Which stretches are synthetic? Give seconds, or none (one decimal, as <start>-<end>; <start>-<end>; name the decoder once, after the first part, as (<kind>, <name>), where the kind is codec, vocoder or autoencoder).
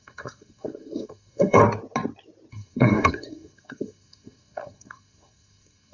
0.0-1.6 (codec, SNAC); 2.5-5.9